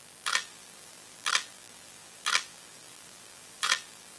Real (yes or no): no